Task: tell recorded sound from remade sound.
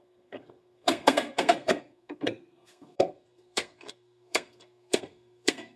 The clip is remade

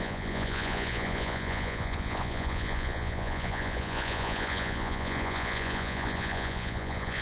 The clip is remade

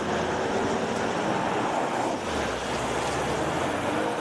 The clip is recorded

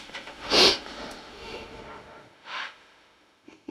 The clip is remade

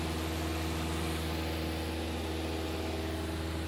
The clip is recorded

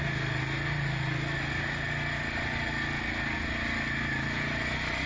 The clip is recorded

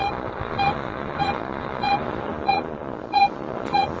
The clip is remade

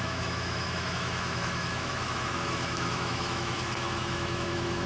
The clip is remade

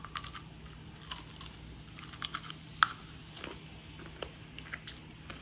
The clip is recorded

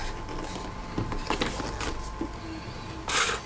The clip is recorded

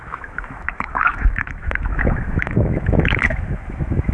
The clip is remade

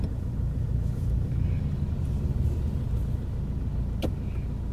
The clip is recorded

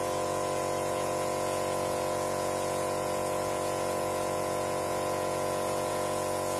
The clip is remade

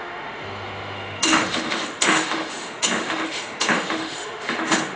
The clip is remade